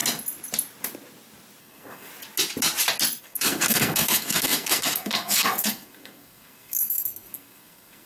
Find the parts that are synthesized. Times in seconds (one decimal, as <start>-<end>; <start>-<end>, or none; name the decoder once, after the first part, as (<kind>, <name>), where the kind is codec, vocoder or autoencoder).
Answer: 1.6-2.1 (codec, SNAC); 3.2-8.1